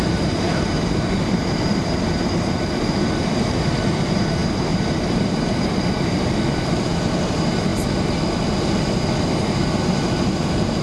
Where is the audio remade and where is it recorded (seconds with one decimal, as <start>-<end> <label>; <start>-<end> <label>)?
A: 0.0-7.7 remade; 7.7-9.2 recorded; 9.2-10.8 remade